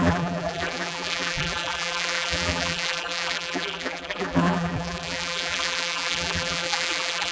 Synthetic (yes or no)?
yes